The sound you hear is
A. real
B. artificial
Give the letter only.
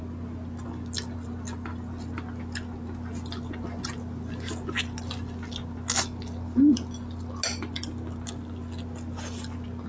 A